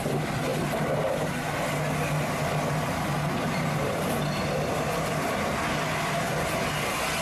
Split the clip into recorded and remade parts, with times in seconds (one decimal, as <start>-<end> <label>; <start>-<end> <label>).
0.0-3.1 recorded; 3.1-4.2 remade; 4.2-4.7 recorded; 4.7-5.3 remade; 5.3-7.2 recorded